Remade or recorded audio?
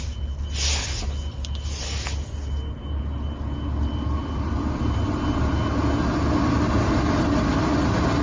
recorded